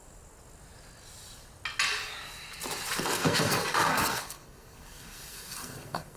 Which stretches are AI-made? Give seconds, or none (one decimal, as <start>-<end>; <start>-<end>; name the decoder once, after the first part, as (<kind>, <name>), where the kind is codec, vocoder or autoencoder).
2.9-6.2 (codec, SNAC)